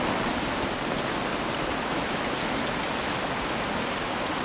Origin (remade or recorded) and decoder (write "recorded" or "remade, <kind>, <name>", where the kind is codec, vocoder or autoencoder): recorded